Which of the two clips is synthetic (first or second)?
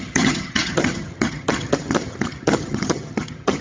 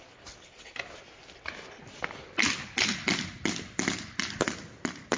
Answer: first